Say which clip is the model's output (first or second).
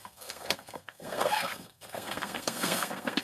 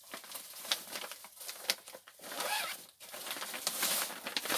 first